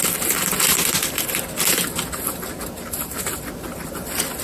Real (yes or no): yes